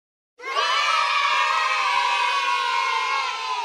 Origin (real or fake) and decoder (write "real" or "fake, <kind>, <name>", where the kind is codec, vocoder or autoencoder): real